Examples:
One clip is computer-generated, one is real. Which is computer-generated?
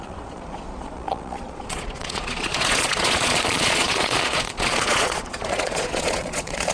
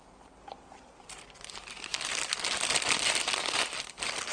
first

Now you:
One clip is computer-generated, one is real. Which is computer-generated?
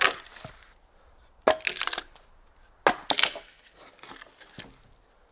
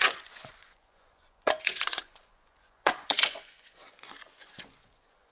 second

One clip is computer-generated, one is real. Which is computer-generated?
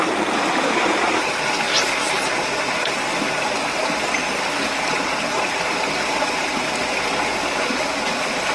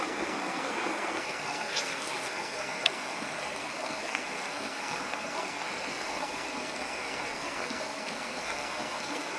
second